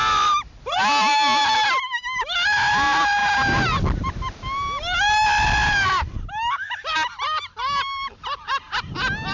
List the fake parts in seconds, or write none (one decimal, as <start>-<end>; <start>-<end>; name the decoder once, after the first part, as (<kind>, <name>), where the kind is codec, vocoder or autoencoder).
none

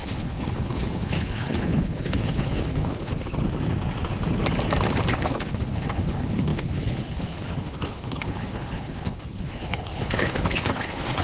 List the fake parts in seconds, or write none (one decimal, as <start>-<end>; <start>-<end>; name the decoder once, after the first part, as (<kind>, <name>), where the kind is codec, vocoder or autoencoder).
0.0-3.1 (codec, HILCodec); 5.1-11.2

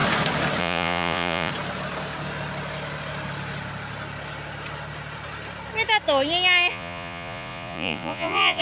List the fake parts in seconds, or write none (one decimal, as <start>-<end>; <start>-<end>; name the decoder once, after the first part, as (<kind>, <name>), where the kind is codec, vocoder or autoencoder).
0.6-1.5 (vocoder, Vocos); 6.7-8.6

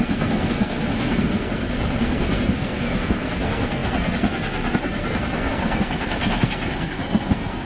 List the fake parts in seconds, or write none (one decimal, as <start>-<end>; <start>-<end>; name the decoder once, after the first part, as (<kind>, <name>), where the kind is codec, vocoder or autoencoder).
0.0-7.7 (codec, SNAC)

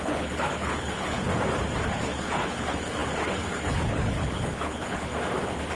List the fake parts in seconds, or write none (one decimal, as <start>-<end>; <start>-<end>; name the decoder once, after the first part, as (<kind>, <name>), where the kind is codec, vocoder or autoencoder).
0.0-1.3 (codec, HILCodec); 1.9-5.1